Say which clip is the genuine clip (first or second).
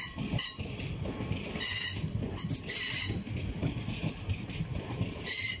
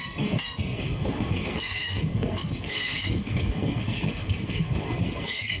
first